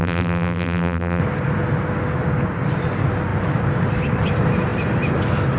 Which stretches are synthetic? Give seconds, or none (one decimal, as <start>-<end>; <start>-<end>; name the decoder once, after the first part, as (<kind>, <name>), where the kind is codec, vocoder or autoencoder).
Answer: 0.0-1.2 (vocoder, BigVGAN v2)